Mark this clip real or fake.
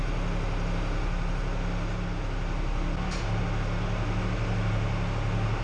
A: real